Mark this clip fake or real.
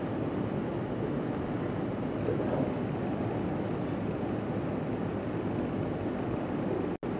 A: real